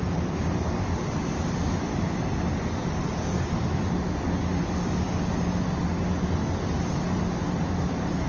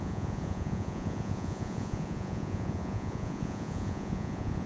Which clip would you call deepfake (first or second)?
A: second